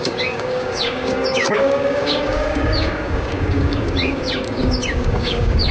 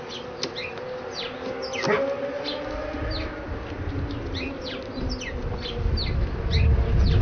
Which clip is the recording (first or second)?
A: second